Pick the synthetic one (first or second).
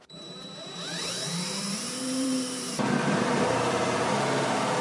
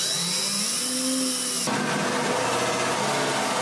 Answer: first